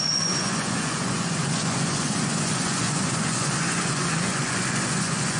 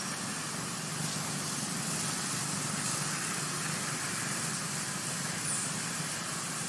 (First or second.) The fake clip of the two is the first